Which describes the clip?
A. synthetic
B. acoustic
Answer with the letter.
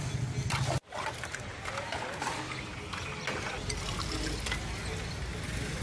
B